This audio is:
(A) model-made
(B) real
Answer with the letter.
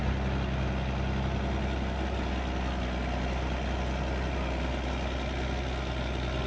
B